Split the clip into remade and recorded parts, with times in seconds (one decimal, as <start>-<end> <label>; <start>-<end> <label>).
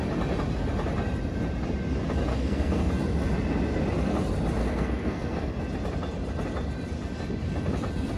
0.0-2.3 recorded; 2.3-2.9 remade; 2.9-4.6 recorded; 4.6-5.6 remade; 5.6-8.2 recorded